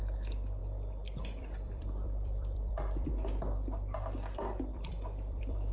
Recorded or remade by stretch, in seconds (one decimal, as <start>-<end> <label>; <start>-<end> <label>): 0.0-0.6 recorded; 0.6-3.1 remade; 3.1-4.7 recorded; 4.7-5.7 remade